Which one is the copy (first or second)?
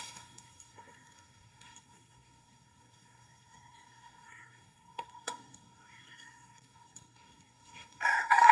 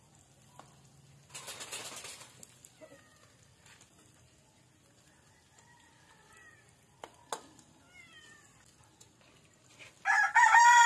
first